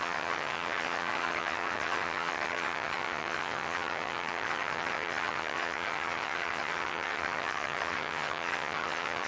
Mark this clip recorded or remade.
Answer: remade